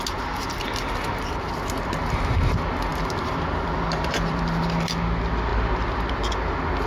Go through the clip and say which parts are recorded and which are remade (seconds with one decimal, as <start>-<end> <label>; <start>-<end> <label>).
0.0-2.9 recorded; 2.9-4.4 remade; 4.4-5.5 recorded; 5.5-6.1 remade; 6.1-6.9 recorded